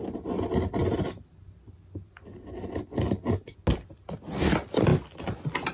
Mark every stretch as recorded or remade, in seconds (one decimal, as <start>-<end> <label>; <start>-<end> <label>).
0.0-5.7 recorded